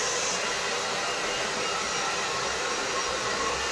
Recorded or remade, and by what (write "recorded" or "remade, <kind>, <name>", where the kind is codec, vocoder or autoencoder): recorded